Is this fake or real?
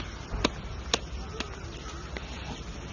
real